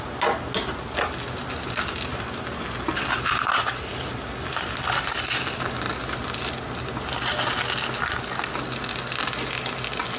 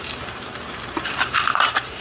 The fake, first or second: second